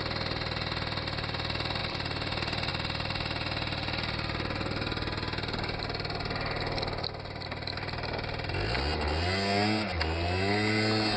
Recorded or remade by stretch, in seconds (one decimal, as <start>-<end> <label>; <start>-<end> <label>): 0.0-11.2 recorded